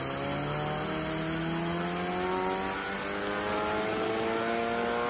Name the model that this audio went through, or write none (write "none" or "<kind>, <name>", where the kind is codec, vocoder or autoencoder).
none